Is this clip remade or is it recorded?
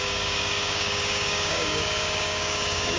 remade